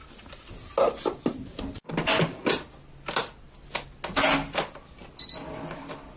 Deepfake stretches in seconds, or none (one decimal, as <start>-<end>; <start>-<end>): none